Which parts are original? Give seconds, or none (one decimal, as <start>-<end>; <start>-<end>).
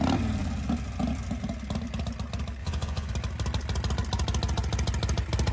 0.0-2.6; 3.1-5.5